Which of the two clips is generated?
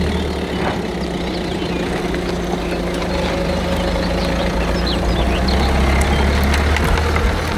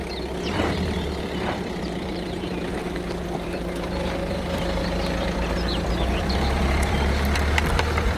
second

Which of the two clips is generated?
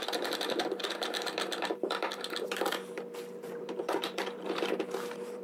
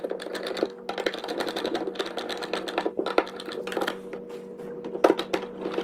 first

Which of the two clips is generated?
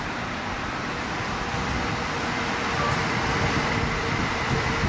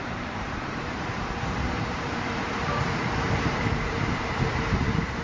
second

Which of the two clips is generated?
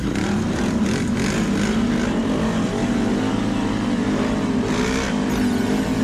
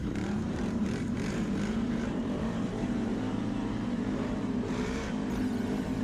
second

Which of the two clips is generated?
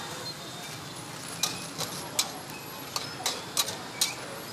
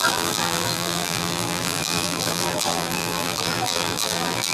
second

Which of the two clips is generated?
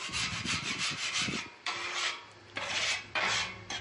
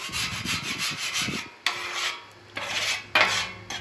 first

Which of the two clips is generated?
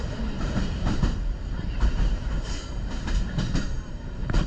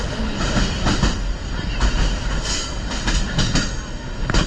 first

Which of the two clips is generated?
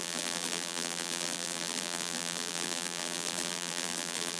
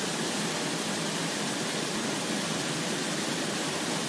first